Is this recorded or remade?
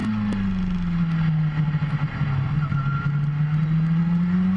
recorded